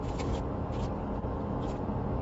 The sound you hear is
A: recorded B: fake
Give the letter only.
A